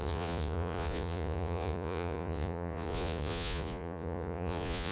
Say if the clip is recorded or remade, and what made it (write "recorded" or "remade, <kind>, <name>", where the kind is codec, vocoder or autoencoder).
remade, vocoder, Vocos